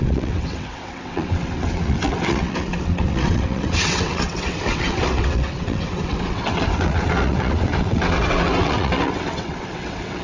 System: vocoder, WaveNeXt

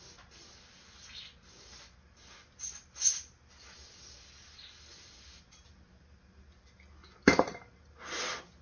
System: none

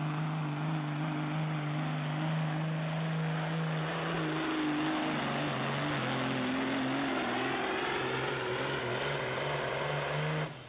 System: none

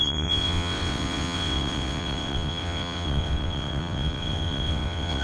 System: vocoder, WaveNeXt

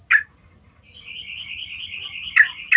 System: none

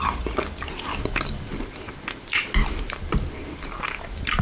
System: none